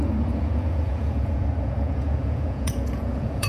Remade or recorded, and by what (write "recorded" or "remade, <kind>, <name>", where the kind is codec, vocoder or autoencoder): remade, vocoder, Vocos